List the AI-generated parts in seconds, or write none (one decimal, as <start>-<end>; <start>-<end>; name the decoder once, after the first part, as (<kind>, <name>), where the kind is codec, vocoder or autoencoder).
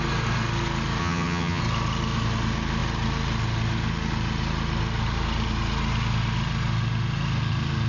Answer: 1.0-1.6 (vocoder, HiFi-GAN)